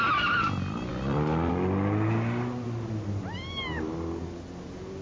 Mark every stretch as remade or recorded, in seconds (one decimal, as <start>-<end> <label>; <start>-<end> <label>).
0.0-5.0 recorded